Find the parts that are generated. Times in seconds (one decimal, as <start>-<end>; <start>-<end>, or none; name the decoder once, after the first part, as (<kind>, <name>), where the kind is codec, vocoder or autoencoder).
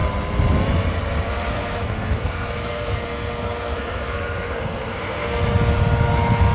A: 1.5-5.4 (codec, SNAC)